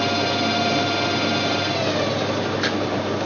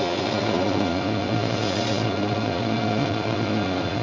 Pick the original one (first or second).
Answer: first